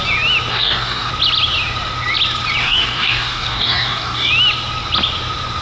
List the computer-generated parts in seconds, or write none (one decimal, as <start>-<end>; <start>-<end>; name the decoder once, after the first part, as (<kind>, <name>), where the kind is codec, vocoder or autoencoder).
0.5-1.1 (codec, DAC); 2.6-4.3